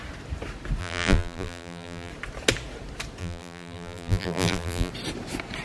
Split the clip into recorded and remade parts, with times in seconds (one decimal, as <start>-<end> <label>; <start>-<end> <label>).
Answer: 0.0-0.8 recorded; 0.8-2.1 remade; 2.1-3.2 recorded; 3.2-4.9 remade; 4.9-5.6 recorded